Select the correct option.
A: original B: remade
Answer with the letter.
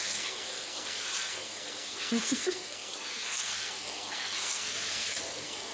B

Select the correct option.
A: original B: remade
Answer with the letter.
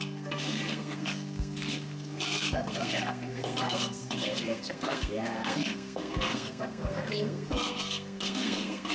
B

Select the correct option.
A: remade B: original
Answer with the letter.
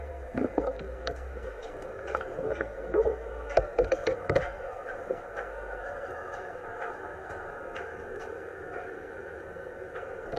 A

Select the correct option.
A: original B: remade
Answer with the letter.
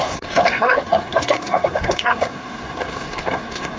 B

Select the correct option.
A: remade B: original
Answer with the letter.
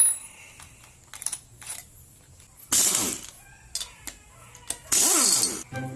B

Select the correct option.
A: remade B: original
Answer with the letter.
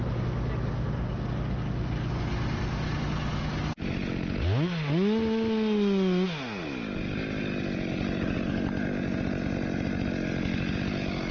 B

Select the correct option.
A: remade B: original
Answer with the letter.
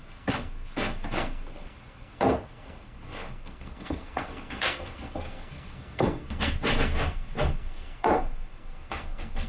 A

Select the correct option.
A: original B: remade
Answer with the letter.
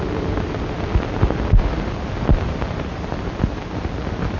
A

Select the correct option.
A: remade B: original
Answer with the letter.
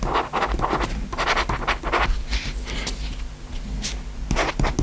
B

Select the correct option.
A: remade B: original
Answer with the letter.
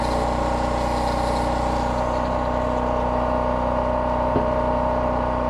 B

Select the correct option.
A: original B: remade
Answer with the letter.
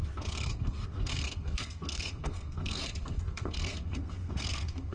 B